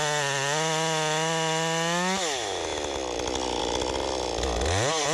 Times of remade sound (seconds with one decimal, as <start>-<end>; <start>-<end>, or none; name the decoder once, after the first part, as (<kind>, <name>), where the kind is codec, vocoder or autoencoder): none